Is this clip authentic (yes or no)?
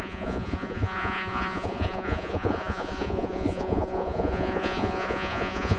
no